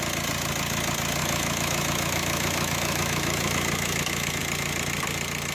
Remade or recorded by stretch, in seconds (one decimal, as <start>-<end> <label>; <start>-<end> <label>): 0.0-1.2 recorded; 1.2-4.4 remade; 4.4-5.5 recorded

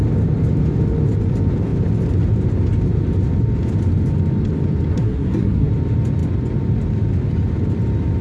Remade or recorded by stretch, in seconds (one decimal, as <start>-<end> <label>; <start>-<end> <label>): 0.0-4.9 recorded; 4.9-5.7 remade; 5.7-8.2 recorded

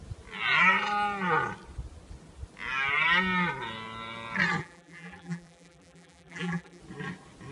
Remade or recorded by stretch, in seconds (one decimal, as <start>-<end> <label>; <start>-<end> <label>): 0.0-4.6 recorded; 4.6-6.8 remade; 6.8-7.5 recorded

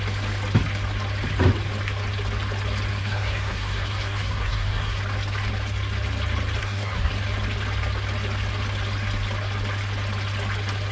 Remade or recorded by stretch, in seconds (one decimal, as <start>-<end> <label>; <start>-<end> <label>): 0.0-2.9 recorded; 2.9-5.0 remade; 5.0-6.6 recorded; 6.6-7.1 remade; 7.1-10.9 recorded

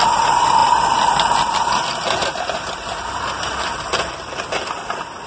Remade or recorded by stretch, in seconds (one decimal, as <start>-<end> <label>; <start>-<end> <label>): 0.0-5.3 recorded

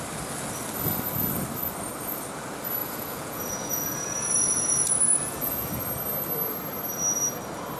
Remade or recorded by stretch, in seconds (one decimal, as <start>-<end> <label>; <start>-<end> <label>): 0.0-2.8 recorded; 2.8-5.7 remade; 5.7-7.8 recorded

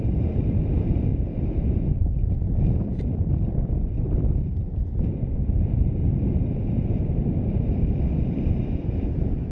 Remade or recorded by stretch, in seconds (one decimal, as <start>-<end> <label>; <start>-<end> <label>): 0.0-1.1 remade; 1.1-2.0 recorded; 2.0-6.0 remade; 6.0-6.9 recorded; 6.9-9.5 remade

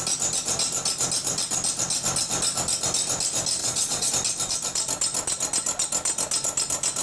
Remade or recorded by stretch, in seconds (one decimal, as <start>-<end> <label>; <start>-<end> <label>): 0.0-3.6 recorded; 3.6-4.1 remade; 4.1-7.0 recorded